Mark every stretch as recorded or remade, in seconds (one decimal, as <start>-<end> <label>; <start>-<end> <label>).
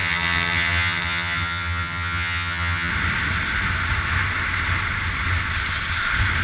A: 0.0-2.9 remade; 2.9-6.4 recorded